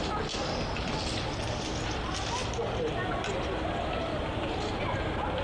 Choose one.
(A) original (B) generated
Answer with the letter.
A